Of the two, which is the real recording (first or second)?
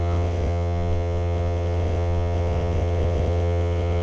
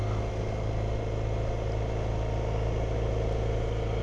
second